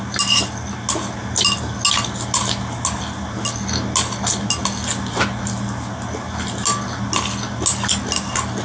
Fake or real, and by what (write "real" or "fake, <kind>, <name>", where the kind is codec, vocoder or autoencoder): real